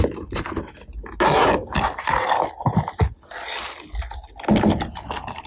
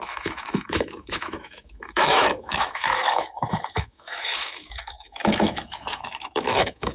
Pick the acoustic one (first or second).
first